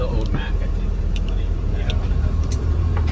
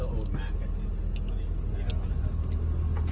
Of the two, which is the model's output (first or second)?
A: first